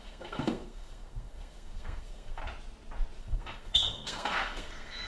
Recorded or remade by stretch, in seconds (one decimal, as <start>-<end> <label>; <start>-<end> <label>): 0.0-2.4 remade; 2.4-3.2 recorded; 3.2-5.1 remade